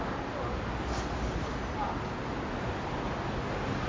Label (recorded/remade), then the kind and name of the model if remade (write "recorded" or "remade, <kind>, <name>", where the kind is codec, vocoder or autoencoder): recorded